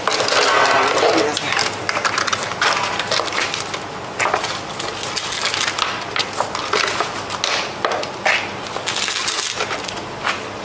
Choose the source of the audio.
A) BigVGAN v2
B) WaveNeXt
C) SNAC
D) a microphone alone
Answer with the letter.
D